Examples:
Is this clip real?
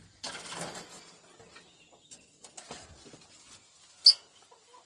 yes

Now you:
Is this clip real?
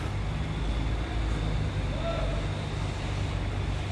yes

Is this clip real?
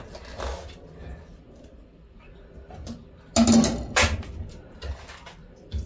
yes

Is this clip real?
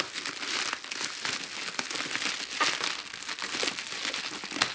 yes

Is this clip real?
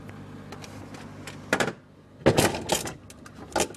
yes